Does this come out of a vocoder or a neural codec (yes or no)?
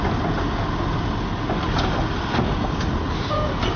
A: no